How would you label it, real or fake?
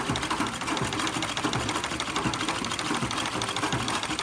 real